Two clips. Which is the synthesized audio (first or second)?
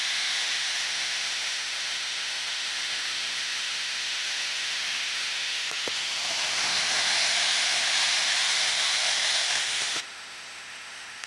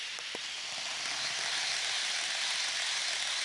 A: first